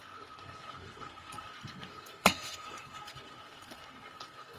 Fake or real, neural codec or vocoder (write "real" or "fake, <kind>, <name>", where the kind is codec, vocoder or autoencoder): fake, codec, SNAC